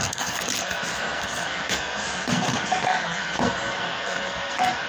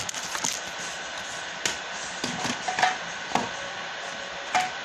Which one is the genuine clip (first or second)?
second